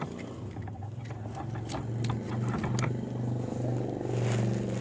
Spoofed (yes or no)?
no